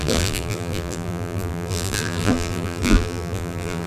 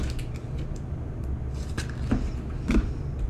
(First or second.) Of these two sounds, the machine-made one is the first